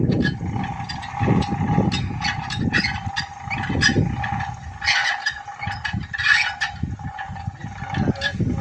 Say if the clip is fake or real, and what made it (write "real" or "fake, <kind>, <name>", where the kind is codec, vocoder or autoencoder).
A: real